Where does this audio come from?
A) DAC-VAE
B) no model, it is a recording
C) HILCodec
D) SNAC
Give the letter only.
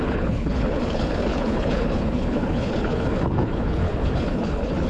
C